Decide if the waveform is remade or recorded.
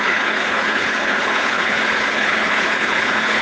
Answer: remade